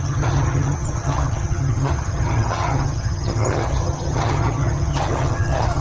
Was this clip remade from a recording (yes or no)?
yes